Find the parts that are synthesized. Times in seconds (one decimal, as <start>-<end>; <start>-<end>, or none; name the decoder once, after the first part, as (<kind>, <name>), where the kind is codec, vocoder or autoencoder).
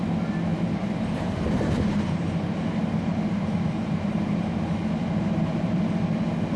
0.5-4.5 (vocoder, BigVGAN v2); 5.0-5.8